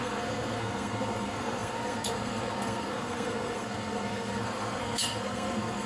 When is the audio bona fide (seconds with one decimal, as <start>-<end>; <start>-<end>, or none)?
none